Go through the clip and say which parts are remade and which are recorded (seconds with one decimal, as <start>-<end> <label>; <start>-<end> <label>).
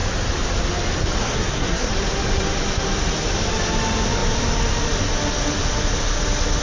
0.0-1.2 recorded; 1.2-1.9 remade; 1.9-6.6 recorded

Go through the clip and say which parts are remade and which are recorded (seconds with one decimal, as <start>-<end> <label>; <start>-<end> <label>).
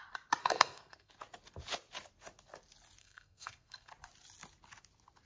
0.0-0.4 recorded; 0.4-1.1 remade; 1.1-3.0 recorded; 3.0-3.9 remade; 3.9-5.3 recorded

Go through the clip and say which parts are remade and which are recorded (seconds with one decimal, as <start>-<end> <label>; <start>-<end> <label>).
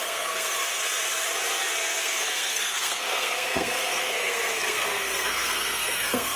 0.0-0.8 remade; 0.8-2.0 recorded; 2.0-6.4 remade